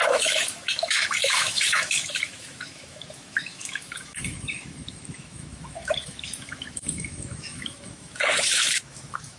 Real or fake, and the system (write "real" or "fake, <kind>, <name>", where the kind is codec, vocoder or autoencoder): fake, autoencoder, DAC-VAE